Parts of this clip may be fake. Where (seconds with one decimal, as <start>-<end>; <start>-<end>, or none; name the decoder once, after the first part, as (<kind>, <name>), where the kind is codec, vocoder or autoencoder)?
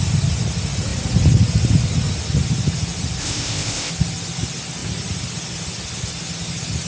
3.2-3.9 (codec, ZipCodec)